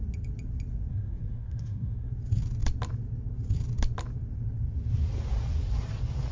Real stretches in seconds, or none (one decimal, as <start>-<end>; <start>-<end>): 0.0-0.9; 2.1-6.3